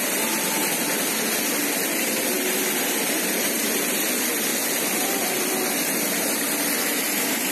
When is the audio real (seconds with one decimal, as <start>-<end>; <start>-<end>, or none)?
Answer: 0.0-7.5